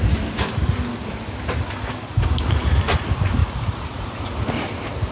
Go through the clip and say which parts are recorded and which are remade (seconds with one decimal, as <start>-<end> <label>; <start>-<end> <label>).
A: 0.0-3.4 recorded; 3.4-4.2 remade; 4.2-5.1 recorded